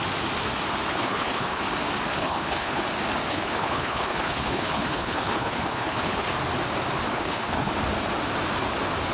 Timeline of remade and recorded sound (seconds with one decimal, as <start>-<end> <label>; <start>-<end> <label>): 0.0-0.9 recorded; 0.9-1.6 remade; 1.6-2.1 recorded; 2.1-2.8 remade; 2.8-3.3 recorded; 3.3-6.3 remade; 6.3-7.1 recorded; 7.1-7.7 remade; 7.7-9.1 recorded